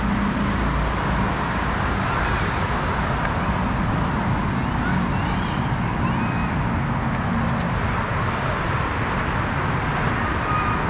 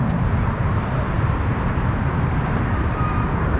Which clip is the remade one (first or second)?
second